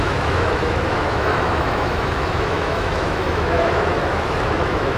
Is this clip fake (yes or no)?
yes